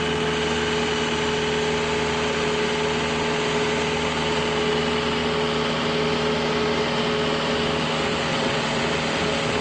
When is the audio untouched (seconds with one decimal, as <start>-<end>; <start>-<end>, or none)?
0.0-8.3; 8.8-9.6